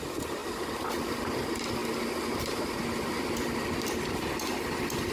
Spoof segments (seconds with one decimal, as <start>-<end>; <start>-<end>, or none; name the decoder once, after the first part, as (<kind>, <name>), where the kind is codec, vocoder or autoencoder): 0.4-0.9 (vocoder, BigVGAN v2)